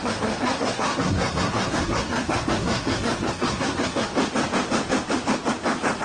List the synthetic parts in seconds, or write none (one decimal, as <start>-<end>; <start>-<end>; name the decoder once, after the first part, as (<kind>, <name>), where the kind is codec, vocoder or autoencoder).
0.0-4.1 (codec, SNAC)